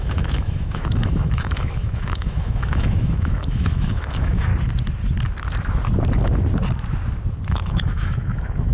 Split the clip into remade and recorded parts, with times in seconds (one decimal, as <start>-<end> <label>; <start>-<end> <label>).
0.0-4.5 remade; 4.5-7.5 recorded; 7.5-8.7 remade